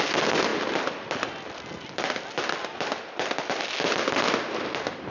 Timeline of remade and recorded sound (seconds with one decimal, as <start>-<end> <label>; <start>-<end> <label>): 0.0-5.1 recorded